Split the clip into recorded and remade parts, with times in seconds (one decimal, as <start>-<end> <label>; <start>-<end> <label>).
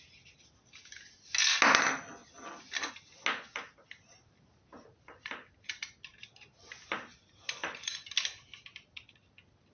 0.0-9.7 recorded